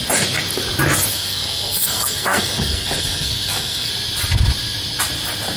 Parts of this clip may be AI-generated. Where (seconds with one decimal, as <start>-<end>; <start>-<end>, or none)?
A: 1.1-3.9